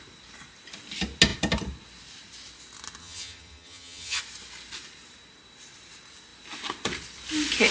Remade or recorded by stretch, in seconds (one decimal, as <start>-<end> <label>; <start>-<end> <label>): 0.0-3.0 recorded; 3.0-4.2 remade; 4.2-7.7 recorded